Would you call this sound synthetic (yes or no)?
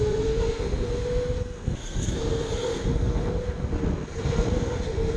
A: yes